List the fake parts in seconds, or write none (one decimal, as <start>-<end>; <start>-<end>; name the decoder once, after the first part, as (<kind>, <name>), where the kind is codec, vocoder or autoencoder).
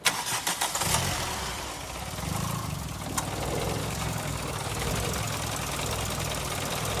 3.8-4.9 (codec, DAC)